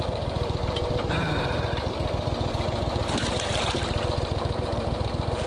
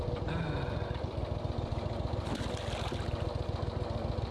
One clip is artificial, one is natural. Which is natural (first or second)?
second